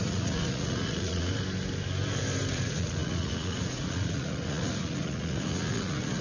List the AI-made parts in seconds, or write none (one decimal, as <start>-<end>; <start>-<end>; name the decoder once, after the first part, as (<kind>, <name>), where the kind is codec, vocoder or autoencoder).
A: 0.0-1.3 (vocoder, Vocos); 2.5-6.2